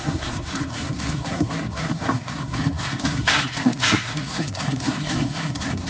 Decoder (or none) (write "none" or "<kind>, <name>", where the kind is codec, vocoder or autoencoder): codec, SNAC